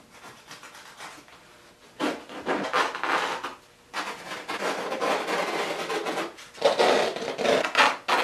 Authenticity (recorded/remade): recorded